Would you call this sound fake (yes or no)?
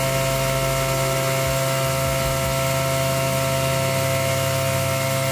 no